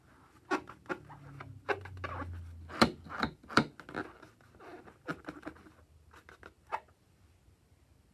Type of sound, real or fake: real